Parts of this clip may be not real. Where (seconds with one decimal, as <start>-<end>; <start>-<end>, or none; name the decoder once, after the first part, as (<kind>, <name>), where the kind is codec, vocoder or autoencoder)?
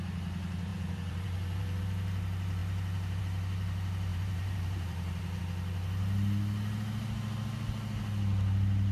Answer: 0.7-1.8 (vocoder, BigVGAN v2); 4.1-5.4